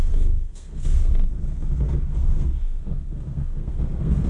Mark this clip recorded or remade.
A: remade